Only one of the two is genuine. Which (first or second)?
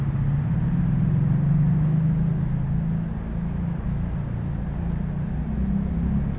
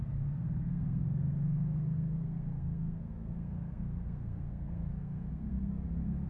first